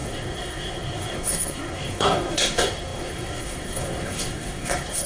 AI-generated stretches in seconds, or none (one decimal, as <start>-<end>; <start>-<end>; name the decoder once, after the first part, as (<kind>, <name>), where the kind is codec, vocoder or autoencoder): 0.0-5.1 (codec, SNAC)